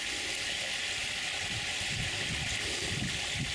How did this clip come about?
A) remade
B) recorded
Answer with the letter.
B